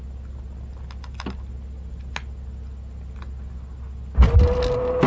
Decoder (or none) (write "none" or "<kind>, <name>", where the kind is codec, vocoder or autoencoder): none